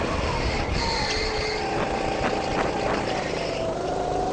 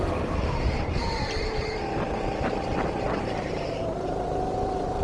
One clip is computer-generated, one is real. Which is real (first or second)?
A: first